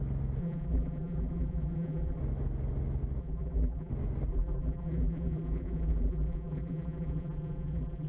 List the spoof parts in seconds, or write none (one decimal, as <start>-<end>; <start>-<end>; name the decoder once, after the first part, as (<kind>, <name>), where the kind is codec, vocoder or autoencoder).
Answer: 0.4-2.2 (vocoder, BigVGAN v2); 3.2-3.9; 4.3-8.1